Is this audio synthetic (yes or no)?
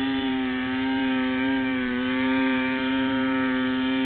yes